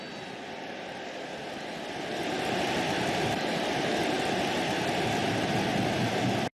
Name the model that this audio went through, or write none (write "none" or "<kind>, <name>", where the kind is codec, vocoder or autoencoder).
none